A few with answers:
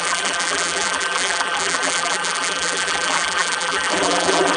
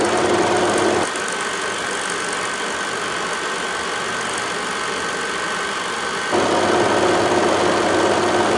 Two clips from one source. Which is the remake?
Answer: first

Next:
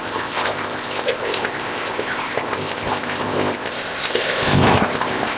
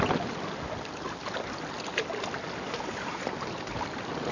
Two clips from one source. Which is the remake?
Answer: first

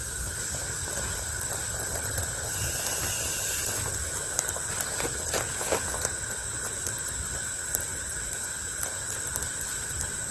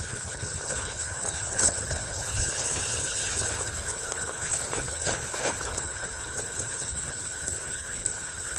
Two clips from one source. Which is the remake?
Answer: second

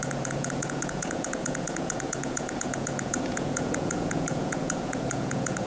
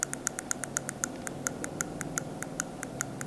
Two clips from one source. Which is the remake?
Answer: first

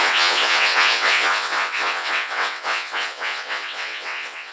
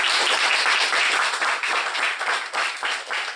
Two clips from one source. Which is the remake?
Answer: first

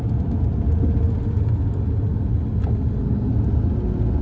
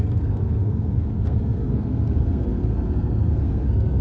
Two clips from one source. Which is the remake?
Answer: second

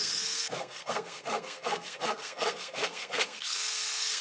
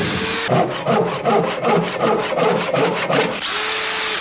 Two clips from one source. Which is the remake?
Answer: first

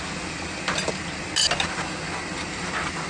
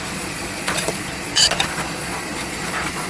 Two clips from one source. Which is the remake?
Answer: second